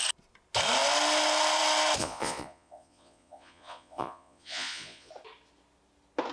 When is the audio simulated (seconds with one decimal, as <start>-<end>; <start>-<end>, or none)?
2.0-5.1